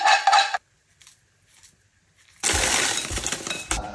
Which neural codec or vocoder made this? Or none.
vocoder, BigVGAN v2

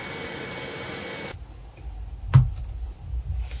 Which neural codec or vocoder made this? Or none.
none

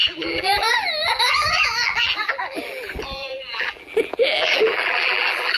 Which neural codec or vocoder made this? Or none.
vocoder, BigVGAN v2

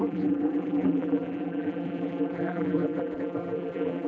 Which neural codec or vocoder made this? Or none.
vocoder, BigVGAN v2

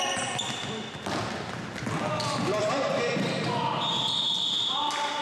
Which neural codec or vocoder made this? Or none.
none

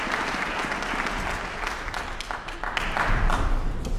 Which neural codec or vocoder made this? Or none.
none